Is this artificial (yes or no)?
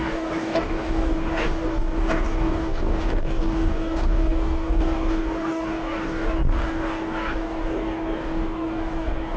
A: yes